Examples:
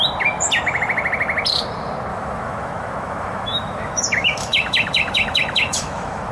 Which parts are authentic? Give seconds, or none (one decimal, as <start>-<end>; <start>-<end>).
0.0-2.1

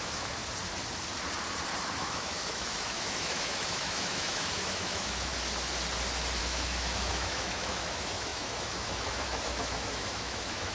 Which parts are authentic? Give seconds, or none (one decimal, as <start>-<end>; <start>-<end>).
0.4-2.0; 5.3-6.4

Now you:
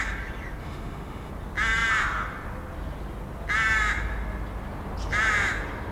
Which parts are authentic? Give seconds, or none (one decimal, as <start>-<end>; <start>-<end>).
0.0-0.6; 1.3-5.9

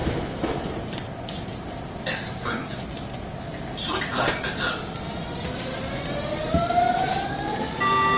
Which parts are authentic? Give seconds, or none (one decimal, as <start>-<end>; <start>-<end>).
0.7-8.2

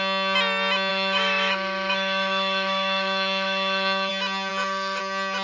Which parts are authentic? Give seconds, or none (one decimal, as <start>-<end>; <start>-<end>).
0.0-0.9; 4.1-4.5; 5.0-5.4